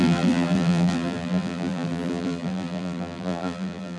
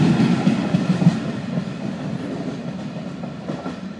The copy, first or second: first